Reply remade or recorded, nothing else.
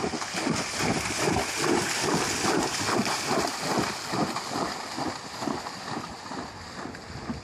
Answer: recorded